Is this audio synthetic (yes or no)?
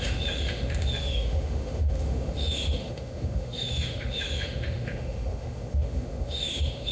yes